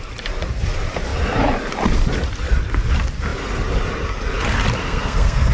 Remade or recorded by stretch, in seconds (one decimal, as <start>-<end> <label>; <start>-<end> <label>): 0.0-4.8 recorded; 4.8-5.5 remade